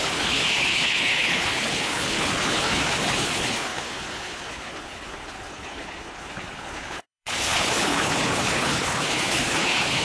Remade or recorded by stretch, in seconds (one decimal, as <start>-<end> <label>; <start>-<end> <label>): 0.0-10.0 remade